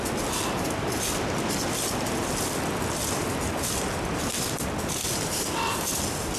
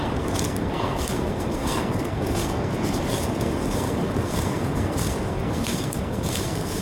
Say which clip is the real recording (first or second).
first